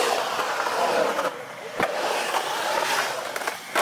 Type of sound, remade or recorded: recorded